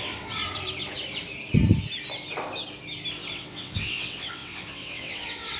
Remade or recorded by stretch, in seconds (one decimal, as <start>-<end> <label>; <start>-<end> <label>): 0.0-0.4 remade; 0.4-3.3 recorded; 3.3-5.6 remade